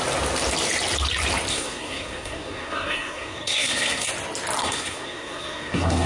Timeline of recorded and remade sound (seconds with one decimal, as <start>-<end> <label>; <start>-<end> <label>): 0.0-1.5 recorded; 1.5-4.1 remade; 4.1-4.6 recorded; 4.6-6.1 remade